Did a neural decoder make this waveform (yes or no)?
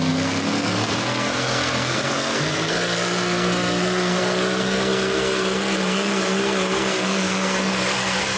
yes